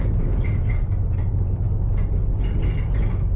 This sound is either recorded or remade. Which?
recorded